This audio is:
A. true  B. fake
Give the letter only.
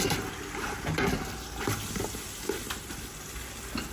A